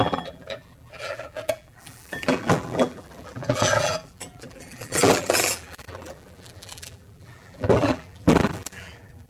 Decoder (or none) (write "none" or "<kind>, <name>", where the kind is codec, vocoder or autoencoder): vocoder, BigVGAN v2